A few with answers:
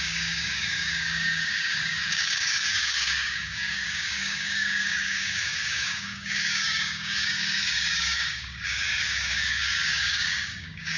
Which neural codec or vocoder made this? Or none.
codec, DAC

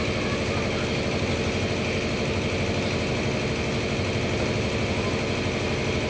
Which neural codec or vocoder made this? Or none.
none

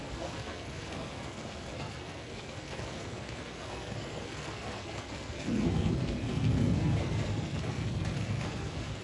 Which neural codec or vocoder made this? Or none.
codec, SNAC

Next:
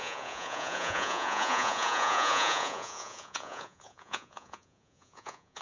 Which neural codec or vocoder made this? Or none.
vocoder, Vocos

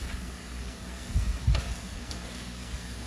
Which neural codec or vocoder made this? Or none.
codec, SNAC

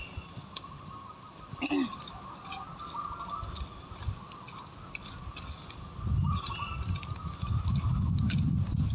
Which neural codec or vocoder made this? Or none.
none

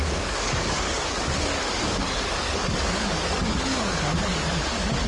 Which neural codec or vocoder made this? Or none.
codec, DAC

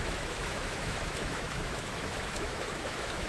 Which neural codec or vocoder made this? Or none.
autoencoder, DAC-VAE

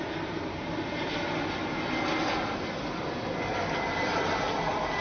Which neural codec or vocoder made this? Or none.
none